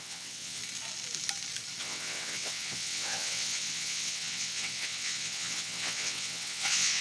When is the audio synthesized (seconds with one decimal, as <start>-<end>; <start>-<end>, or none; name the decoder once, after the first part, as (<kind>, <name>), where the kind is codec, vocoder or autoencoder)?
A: 0.0-0.6 (vocoder, WaveNeXt); 1.8-7.0